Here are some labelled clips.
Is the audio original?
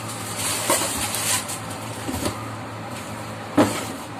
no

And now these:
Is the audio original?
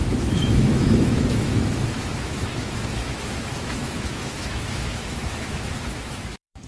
no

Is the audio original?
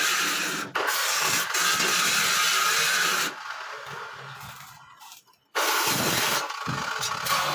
yes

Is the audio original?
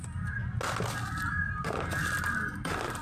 yes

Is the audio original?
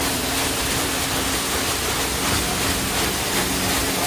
yes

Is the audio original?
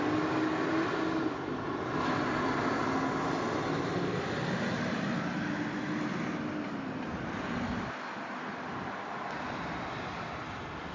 yes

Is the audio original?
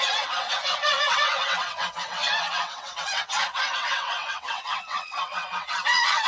no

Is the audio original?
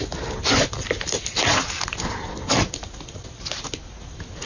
yes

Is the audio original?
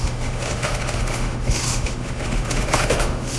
no